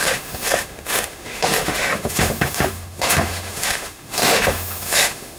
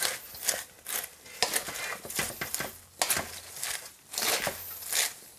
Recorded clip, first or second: second